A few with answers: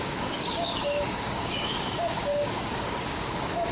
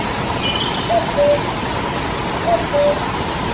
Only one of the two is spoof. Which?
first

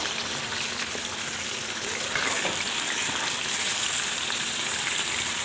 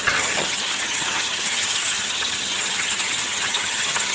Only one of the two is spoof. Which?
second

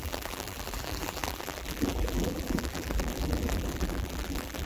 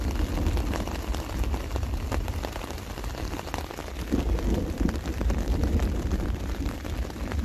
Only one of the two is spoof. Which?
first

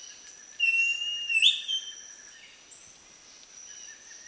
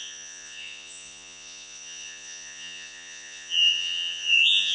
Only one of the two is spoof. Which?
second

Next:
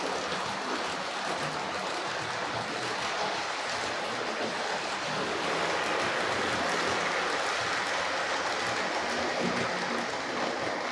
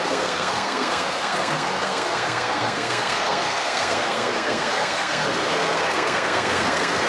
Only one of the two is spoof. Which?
second